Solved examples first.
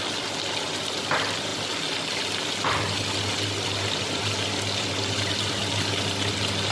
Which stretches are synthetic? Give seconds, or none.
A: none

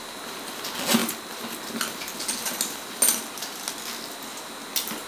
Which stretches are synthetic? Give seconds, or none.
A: none

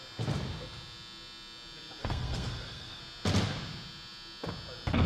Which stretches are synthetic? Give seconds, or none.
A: 2.0-3.0 (codec, SNAC)

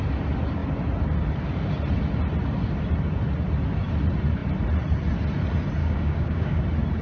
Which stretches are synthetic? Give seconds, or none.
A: 5.8-6.6 (codec, DAC)